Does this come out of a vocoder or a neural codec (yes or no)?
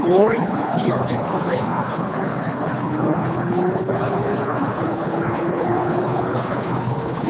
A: yes